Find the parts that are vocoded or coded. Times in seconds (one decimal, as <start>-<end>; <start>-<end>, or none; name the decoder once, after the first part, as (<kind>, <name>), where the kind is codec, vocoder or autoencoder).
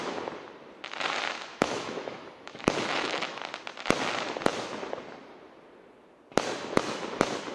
1.5-3.4 (autoencoder, DAC-VAE)